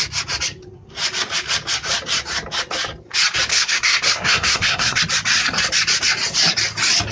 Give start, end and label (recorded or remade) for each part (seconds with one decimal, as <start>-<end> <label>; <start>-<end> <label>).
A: 0.0-3.5 recorded; 3.5-5.0 remade; 5.0-7.1 recorded